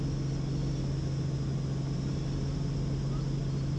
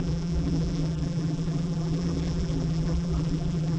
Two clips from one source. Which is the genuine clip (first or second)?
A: first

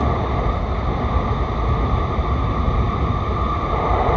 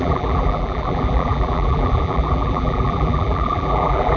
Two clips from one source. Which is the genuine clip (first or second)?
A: first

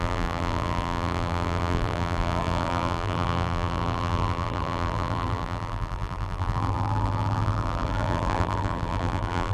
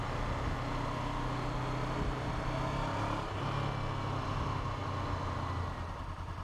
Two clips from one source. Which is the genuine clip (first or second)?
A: second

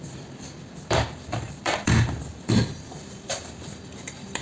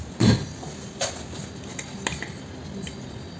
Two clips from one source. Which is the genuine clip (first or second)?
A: second